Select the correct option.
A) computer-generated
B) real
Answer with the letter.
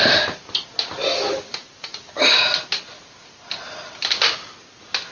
B